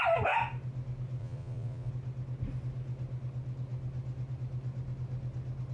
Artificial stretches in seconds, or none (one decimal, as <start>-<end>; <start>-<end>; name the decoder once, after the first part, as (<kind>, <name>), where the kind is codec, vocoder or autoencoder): 1.2-1.9 (vocoder, Vocos)